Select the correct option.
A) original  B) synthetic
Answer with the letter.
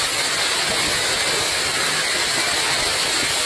A